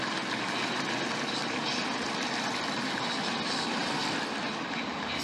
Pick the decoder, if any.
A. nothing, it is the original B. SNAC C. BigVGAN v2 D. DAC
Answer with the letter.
A